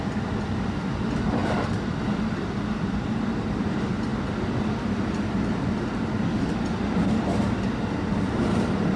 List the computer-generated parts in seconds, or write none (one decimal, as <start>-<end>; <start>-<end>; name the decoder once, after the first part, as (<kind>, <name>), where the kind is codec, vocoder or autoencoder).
0.0-9.0 (vocoder, BigVGAN v2)

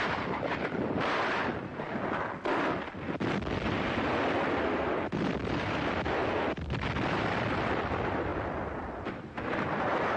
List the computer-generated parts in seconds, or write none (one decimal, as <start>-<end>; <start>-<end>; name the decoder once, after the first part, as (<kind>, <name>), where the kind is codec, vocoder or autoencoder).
0.0-1.7 (vocoder, BigVGAN v2); 4.5-6.2; 7.1-8.3; 8.9-10.2

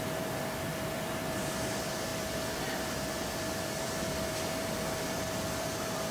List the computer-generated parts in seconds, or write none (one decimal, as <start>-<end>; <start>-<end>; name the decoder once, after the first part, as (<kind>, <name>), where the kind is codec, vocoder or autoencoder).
0.0-6.1 (vocoder, BigVGAN v2)

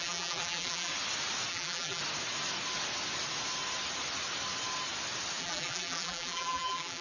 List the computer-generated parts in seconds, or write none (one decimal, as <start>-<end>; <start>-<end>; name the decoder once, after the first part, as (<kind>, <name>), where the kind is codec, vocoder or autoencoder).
0.0-0.9 (vocoder, BigVGAN v2); 1.5-2.0; 5.4-7.0

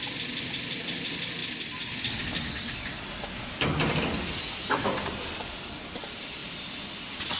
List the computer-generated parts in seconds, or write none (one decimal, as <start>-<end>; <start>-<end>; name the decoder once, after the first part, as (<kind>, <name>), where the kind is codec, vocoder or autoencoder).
6.4-6.9 (vocoder, BigVGAN v2)

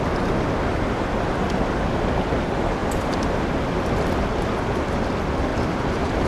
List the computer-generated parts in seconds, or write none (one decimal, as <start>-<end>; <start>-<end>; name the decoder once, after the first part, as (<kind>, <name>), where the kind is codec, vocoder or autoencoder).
0.7-1.3 (vocoder, BigVGAN v2); 5.5-6.3

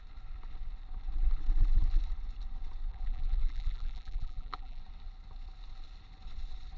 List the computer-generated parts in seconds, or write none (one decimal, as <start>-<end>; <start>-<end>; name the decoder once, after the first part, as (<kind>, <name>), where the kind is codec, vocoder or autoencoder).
2.9-4.8 (vocoder, BigVGAN v2)

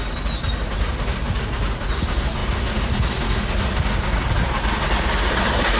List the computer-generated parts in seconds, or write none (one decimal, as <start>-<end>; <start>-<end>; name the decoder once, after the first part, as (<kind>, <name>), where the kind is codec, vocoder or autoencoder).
none